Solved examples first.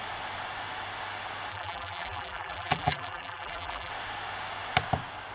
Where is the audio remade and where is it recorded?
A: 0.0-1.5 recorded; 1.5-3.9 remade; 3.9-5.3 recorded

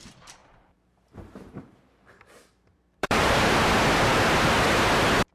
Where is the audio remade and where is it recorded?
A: 0.0-0.4 recorded; 0.4-3.6 remade; 3.6-5.3 recorded

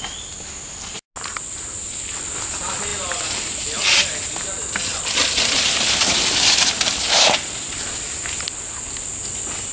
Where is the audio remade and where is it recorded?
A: 0.0-2.9 recorded; 2.9-7.8 remade; 7.8-9.7 recorded

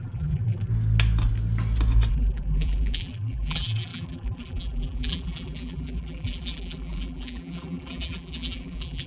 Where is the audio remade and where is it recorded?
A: 0.0-0.7 remade; 0.7-2.1 recorded; 2.1-9.1 remade

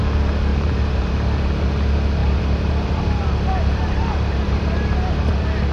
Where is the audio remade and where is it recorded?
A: 0.0-0.5 recorded; 0.5-1.1 remade; 1.1-2.2 recorded; 2.2-5.3 remade; 5.3-5.7 recorded

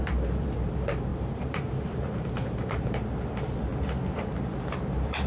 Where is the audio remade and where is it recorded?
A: 0.0-3.7 remade; 3.7-4.4 recorded; 4.4-5.3 remade